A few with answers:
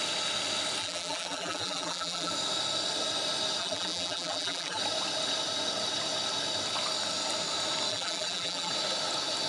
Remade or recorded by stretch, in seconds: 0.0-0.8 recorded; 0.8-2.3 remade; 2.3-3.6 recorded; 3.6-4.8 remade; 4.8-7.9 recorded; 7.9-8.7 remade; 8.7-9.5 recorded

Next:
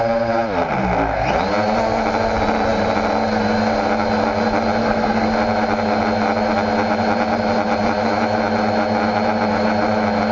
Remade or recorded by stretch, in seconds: 0.0-4.8 recorded; 4.8-5.3 remade; 5.3-10.3 recorded

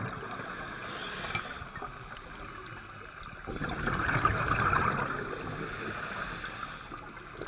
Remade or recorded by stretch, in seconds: 0.0-7.5 recorded

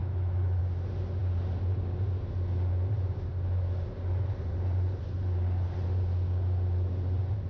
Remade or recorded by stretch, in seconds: 0.0-0.6 remade; 0.6-7.5 recorded

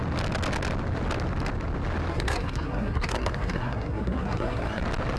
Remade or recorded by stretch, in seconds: 0.0-2.1 recorded; 2.1-4.8 remade; 4.8-5.2 recorded